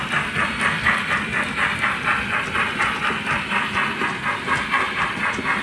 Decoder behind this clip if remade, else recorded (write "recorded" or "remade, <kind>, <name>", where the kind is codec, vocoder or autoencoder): recorded